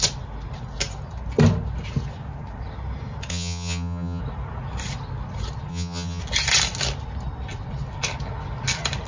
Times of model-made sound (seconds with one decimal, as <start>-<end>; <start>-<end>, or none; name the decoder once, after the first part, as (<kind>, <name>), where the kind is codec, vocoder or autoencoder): 3.3-4.2 (vocoder, HiFi-GAN); 5.7-6.2